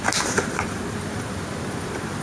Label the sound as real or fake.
real